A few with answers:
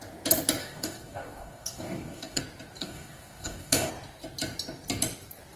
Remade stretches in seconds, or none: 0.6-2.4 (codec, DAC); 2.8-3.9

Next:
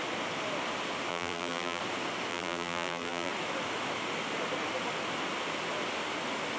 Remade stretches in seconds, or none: 1.1-1.8 (vocoder, BigVGAN v2); 2.3-3.3

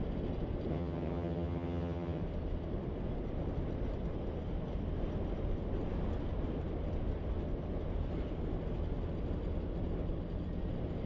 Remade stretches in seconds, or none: 0.7-2.2 (vocoder, HiFi-GAN)

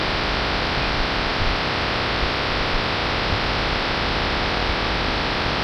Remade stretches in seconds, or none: none

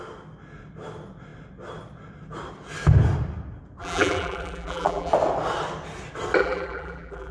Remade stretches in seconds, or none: 3.8-5.1 (vocoder, BigVGAN v2); 6.4-7.3

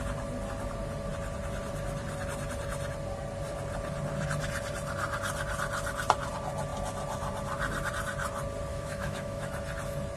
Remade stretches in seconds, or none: 8.7-9.5 (autoencoder, DAC-VAE)

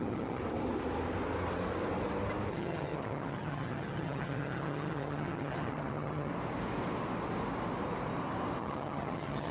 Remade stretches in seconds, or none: 0.0-0.4 (vocoder, HiFi-GAN); 2.5-6.3; 8.6-9.5

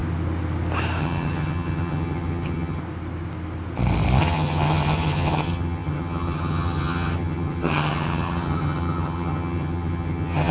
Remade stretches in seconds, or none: 1.0-2.8 (vocoder, HiFi-GAN); 4.2-10.5